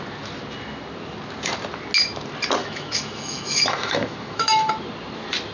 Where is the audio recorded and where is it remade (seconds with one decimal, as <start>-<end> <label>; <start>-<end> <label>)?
0.0-2.6 recorded; 2.6-4.7 remade; 4.7-5.5 recorded